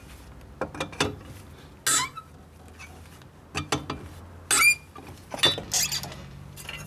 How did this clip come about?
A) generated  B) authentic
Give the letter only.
B